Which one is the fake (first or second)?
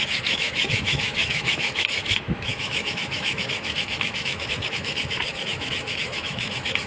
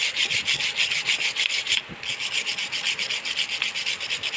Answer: first